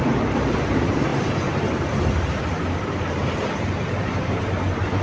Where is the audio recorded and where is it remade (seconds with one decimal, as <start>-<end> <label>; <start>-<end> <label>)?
0.0-5.0 remade

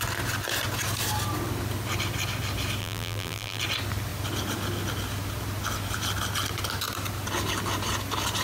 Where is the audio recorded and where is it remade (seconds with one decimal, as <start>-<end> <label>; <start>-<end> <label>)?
0.0-2.8 recorded; 2.8-3.6 remade; 3.6-8.4 recorded

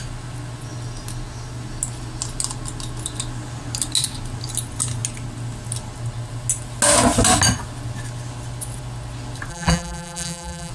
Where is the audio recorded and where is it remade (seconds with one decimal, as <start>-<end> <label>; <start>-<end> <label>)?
0.0-9.5 recorded; 9.5-10.7 remade

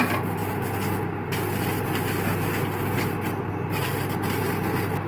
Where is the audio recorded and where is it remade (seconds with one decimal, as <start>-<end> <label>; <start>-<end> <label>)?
0.0-5.1 recorded